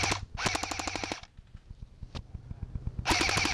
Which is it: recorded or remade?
recorded